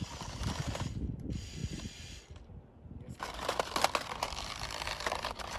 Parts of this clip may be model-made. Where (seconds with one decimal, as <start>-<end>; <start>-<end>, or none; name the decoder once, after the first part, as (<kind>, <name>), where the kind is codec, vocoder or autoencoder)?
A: none